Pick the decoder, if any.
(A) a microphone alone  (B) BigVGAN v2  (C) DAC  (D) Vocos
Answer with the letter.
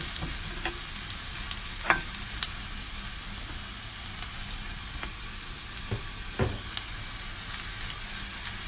A